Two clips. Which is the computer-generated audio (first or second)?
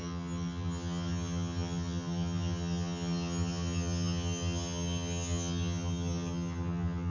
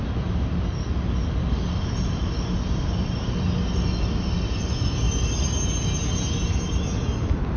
first